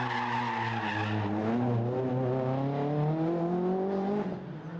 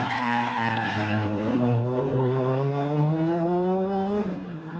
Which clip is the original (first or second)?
first